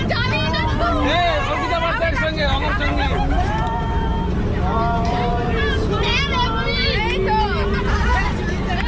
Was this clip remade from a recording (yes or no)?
no